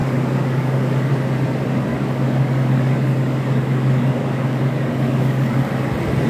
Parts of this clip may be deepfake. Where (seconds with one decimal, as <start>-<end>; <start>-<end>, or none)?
0.0-1.1; 1.9-5.7